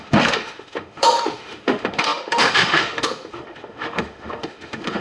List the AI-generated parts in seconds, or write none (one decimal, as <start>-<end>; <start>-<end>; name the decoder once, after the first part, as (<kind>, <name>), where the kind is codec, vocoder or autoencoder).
0.0-5.0 (autoencoder, DAC-VAE)